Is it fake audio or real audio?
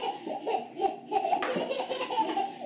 real